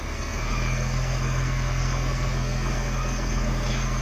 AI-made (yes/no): yes